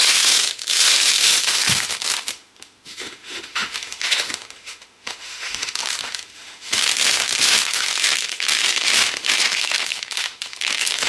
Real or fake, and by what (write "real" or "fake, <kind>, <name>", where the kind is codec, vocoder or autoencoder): fake, autoencoder, DAC-VAE